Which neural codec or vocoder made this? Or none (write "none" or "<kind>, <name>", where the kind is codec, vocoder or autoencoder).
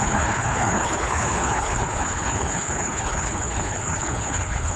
codec, HILCodec